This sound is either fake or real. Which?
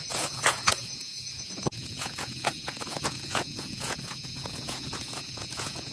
fake